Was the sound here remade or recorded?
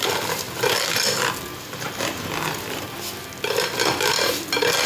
recorded